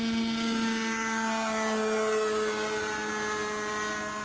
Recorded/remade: recorded